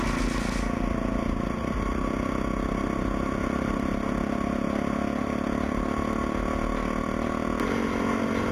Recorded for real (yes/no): yes